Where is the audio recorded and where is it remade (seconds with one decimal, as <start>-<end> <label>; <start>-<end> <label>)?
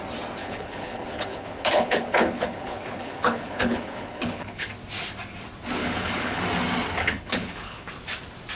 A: 0.0-0.4 recorded; 0.4-4.7 remade; 4.7-5.8 recorded; 5.8-6.4 remade; 6.4-7.0 recorded; 7.0-7.9 remade; 7.9-8.6 recorded